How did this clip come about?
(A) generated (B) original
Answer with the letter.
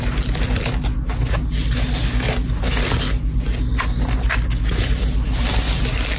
B